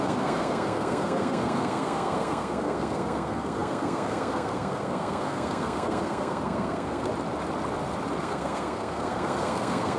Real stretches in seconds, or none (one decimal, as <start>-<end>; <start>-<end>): 7.1-8.2